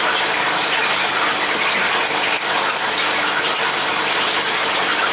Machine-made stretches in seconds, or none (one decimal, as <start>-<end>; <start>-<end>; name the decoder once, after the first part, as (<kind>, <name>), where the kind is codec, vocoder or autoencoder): 0.0-0.8 (vocoder, BigVGAN v2); 3.9-5.1